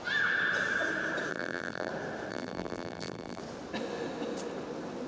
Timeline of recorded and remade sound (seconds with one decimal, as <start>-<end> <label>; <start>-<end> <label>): 0.0-1.3 recorded; 1.3-1.9 remade; 1.9-2.3 recorded; 2.3-3.4 remade; 3.4-5.1 recorded